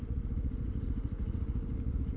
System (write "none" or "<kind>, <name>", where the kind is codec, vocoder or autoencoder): none